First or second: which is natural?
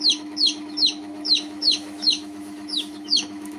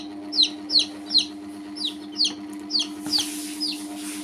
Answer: second